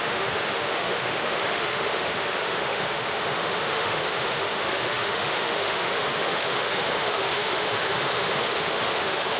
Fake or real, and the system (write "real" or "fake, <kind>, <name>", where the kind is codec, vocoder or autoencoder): fake, autoencoder, DAC-VAE